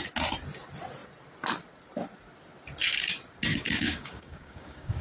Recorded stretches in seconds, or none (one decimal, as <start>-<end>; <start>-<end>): 0.0-3.5